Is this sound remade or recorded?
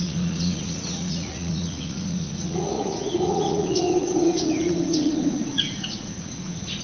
remade